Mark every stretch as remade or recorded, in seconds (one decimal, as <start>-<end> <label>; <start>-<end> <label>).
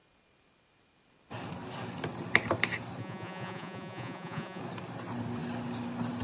0.0-3.0 recorded; 3.0-4.6 remade; 4.6-6.2 recorded